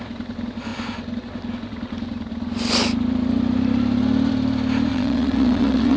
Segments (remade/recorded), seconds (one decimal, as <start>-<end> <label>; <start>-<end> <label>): 0.0-4.9 recorded; 4.9-6.0 remade